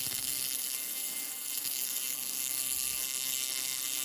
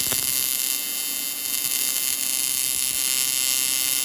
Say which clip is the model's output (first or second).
first